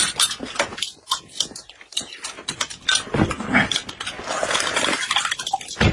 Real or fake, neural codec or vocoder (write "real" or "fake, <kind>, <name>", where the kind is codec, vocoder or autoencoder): real